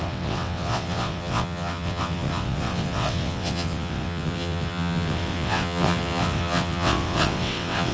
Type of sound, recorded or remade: remade